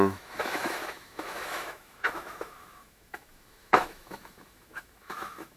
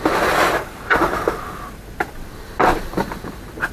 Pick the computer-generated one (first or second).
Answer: first